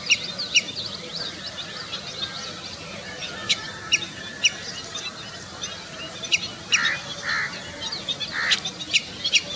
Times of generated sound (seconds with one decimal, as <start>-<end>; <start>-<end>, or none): 1.1-2.0